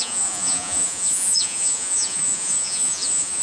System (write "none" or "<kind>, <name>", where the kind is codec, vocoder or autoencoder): vocoder, Vocos